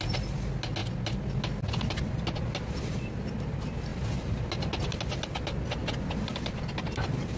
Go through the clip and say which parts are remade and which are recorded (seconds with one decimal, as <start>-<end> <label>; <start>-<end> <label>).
0.0-7.4 recorded